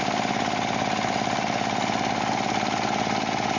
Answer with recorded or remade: recorded